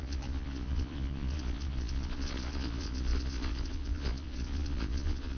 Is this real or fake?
fake